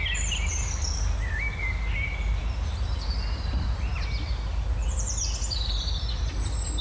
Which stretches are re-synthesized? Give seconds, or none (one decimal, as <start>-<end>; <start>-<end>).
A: none